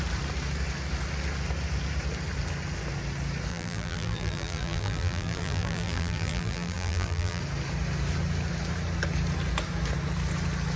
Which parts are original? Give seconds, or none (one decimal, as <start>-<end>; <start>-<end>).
0.0-3.5; 7.4-10.8